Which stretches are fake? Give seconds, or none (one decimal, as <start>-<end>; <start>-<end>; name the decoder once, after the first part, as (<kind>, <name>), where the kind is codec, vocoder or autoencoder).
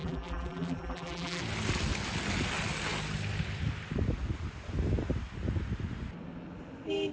0.0-1.4 (vocoder, BigVGAN v2)